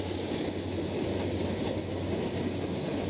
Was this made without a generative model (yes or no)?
yes